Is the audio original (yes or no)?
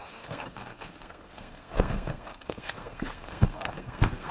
no